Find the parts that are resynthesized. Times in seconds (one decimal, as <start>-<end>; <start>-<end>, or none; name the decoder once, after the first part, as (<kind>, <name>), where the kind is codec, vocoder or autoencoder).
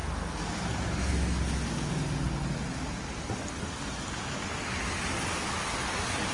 none